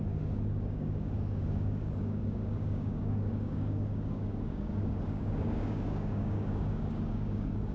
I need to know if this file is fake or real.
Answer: fake